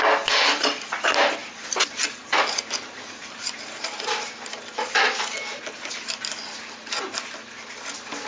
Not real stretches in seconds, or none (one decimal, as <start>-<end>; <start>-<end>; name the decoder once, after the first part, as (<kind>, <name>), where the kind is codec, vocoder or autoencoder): none